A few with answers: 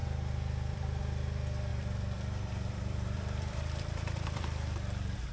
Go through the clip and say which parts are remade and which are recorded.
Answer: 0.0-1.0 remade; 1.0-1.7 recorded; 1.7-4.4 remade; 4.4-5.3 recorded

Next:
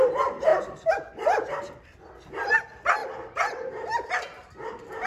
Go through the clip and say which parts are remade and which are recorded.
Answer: 0.0-5.1 recorded